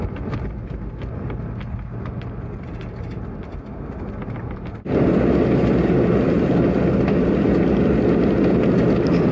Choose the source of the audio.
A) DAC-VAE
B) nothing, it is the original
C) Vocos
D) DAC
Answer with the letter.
B